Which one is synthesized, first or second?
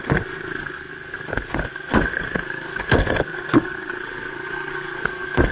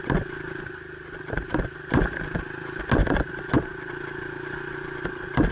first